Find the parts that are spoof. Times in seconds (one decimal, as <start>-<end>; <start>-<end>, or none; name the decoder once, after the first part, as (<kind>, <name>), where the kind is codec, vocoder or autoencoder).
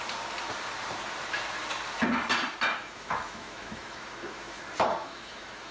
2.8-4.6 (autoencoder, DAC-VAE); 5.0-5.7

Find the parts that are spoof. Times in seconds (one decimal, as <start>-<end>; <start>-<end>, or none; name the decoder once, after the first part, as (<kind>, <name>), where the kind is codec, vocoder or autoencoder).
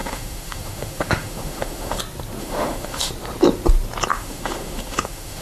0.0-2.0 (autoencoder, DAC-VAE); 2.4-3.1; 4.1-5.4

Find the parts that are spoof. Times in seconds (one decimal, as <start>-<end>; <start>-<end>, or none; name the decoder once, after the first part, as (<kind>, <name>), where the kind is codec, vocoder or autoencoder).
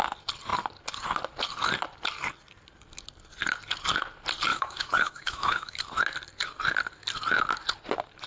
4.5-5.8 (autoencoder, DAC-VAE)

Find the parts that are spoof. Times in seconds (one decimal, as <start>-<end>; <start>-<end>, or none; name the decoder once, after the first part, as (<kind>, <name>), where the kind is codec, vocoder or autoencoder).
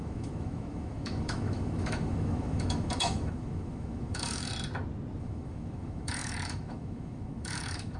0.0-4.5 (autoencoder, DAC-VAE); 5.2-8.0